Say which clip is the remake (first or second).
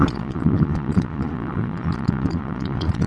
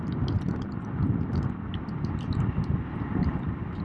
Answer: first